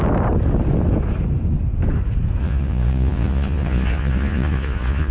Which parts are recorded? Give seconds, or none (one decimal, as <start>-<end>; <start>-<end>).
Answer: 0.0-2.4